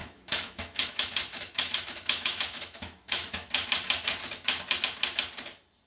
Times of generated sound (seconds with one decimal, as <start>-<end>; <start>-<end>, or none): 0.0-3.5